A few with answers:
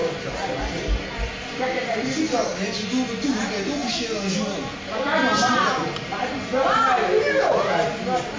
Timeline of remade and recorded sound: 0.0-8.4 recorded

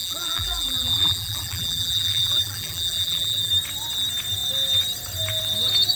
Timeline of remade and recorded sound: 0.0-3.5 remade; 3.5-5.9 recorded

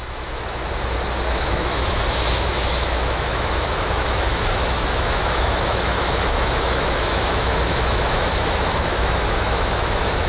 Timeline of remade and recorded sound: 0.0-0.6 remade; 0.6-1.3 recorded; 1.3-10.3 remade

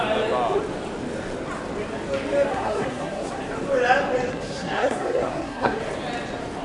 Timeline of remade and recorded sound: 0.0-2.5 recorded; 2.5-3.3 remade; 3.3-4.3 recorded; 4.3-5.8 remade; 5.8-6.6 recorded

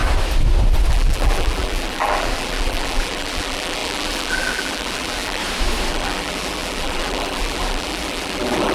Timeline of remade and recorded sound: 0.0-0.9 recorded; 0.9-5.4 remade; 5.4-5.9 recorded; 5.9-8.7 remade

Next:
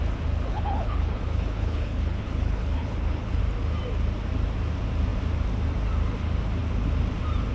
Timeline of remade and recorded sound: 0.0-0.5 recorded; 0.5-3.4 remade; 3.4-7.5 recorded